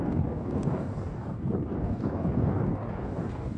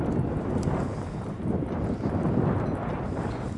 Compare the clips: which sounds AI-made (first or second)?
first